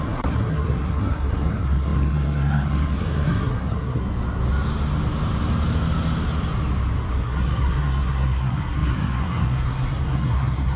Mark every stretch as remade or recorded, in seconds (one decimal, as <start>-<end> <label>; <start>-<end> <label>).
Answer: 0.0-4.0 remade; 4.0-7.1 recorded; 7.1-10.8 remade